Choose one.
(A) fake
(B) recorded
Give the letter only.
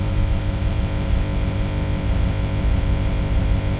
A